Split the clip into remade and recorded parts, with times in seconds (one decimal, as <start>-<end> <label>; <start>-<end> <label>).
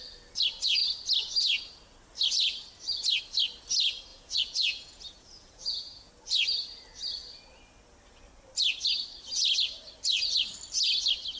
0.0-4.1 recorded; 4.1-6.1 remade; 6.1-11.4 recorded